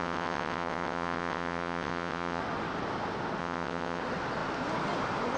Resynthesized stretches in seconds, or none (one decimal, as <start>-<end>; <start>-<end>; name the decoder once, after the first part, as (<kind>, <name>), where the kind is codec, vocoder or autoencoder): 0.0-2.4 (vocoder, WaveNeXt); 3.4-4.0